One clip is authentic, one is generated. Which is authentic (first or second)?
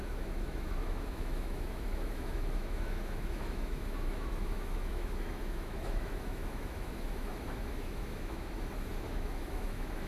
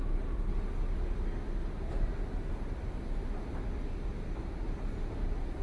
second